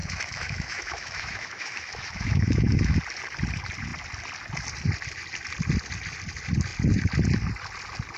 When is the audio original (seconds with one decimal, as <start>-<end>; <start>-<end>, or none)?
3.0-8.2